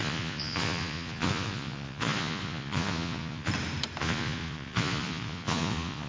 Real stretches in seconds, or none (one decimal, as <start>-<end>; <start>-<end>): 3.5-4.0